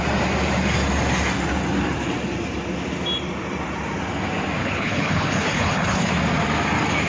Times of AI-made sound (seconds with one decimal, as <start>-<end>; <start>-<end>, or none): 4.6-6.1